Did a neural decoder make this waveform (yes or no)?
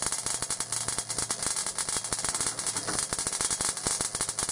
no